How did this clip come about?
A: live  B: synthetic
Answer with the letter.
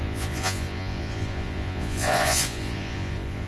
B